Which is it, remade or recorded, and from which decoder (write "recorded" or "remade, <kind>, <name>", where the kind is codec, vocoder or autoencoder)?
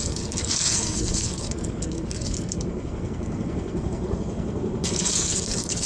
remade, codec, SNAC